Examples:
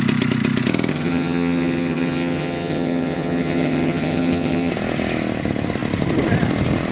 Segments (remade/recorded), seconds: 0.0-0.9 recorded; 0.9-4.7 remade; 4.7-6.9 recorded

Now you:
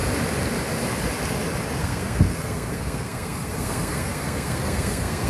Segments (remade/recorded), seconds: 0.0-1.8 recorded; 1.8-5.3 remade

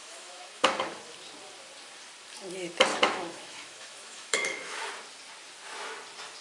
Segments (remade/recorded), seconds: 0.0-1.0 remade; 1.0-2.9 recorded; 2.9-4.9 remade; 4.9-6.4 recorded

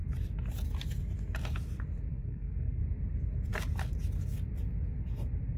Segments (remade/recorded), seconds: 0.0-2.1 recorded; 2.1-2.8 remade; 2.8-5.6 recorded

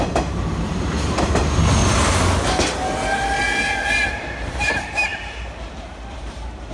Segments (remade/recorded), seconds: 0.0-1.8 remade; 1.8-4.2 recorded; 4.2-6.7 remade

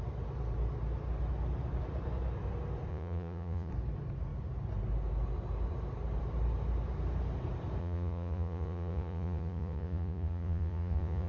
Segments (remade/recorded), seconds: 0.0-2.9 recorded; 2.9-3.7 remade; 3.7-7.8 recorded; 7.8-11.3 remade

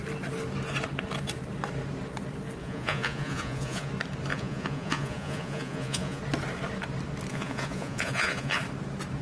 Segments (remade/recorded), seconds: 0.0-2.6 recorded; 2.6-3.9 remade; 3.9-4.3 recorded; 4.3-6.2 remade; 6.2-7.3 recorded; 7.3-8.6 remade; 8.6-9.2 recorded

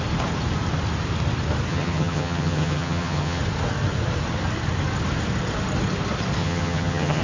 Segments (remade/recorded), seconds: 0.0-1.7 recorded; 1.7-3.4 remade; 3.4-6.4 recorded; 6.4-7.2 remade